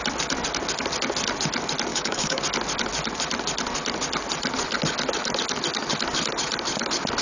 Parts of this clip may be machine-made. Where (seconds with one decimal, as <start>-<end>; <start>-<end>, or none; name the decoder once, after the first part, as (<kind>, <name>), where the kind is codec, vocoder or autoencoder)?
1.9-2.4 (autoencoder, DAC-VAE)